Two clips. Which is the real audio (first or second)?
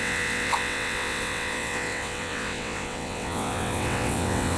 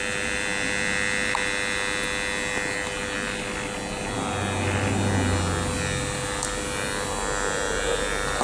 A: second